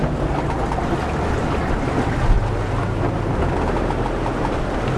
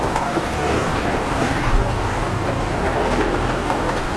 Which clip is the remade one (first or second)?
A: second